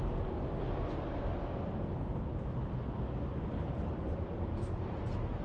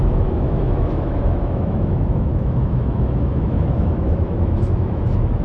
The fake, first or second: second